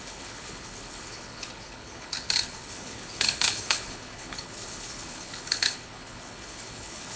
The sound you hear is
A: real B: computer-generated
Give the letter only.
B